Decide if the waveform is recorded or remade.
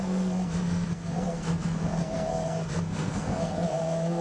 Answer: remade